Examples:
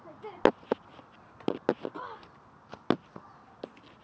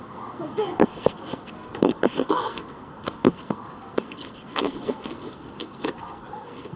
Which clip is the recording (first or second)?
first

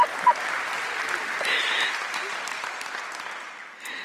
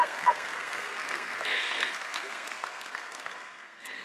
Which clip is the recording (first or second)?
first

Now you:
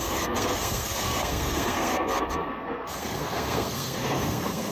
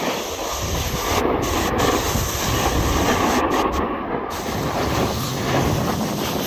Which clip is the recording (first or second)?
second